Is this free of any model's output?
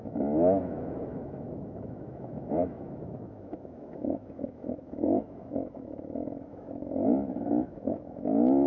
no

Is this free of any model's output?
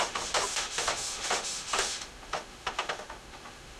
no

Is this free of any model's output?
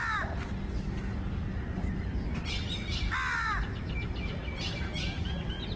yes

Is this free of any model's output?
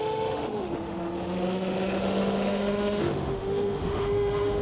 no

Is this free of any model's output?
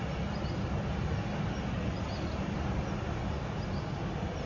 yes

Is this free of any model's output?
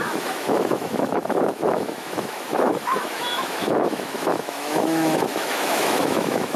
no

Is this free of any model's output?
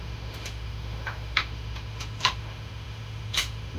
no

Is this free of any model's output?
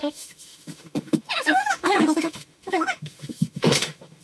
no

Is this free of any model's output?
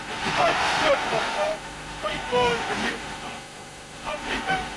no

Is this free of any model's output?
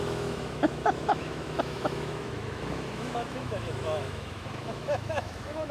no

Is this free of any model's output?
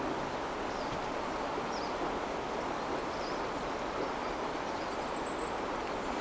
yes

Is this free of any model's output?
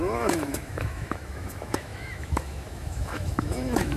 no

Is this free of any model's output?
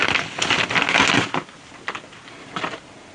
yes